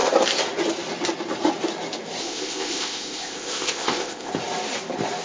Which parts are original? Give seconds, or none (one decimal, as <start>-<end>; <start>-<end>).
0.0-2.2; 4.3-5.2